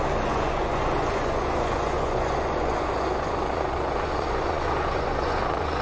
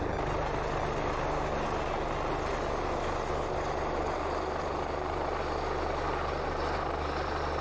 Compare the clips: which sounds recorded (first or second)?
second